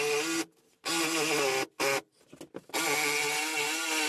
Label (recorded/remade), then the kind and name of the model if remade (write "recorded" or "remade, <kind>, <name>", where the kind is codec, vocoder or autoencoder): recorded